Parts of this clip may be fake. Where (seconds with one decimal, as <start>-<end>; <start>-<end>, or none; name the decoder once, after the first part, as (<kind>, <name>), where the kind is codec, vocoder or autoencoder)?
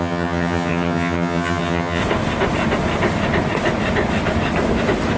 0.0-2.0 (vocoder, HiFi-GAN)